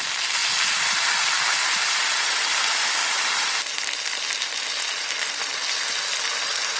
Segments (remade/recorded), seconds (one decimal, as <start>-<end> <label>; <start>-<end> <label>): 0.0-6.8 recorded